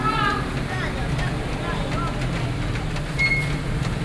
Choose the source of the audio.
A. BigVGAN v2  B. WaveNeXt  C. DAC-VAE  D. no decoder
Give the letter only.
D